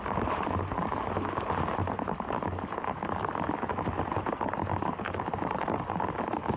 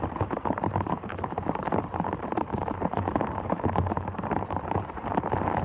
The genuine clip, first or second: first